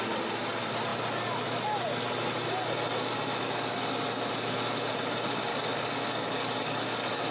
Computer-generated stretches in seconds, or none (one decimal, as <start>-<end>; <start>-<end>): 5.5-7.3